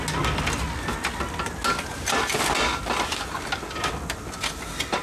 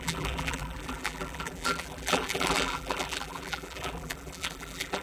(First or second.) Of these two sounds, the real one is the first